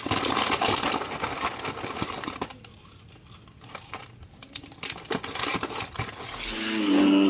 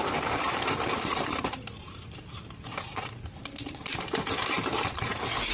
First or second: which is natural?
first